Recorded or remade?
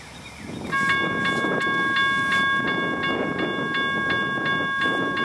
recorded